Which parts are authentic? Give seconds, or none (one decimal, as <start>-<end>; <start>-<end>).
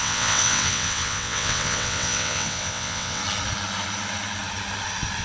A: 3.2-5.2